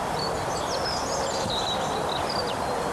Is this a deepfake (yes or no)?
no